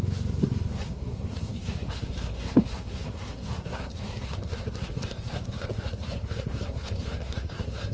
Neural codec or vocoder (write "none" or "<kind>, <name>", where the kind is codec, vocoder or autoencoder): codec, SNAC